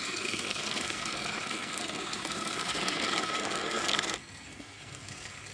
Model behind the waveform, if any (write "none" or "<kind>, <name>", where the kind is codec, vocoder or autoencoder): codec, SNAC